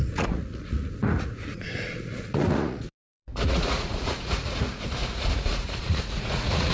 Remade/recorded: remade